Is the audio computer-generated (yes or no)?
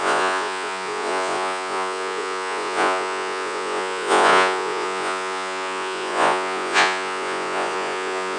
yes